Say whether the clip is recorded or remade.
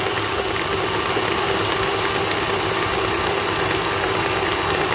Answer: recorded